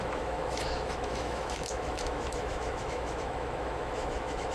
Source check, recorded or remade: remade